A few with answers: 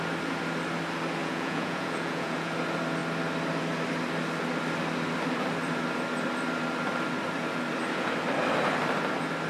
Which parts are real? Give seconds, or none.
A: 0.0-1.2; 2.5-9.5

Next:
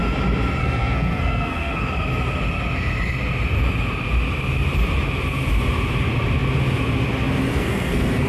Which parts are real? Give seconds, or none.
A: 0.0-0.6; 1.9-7.5

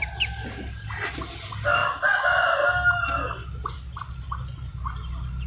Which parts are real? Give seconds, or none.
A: 0.0-5.5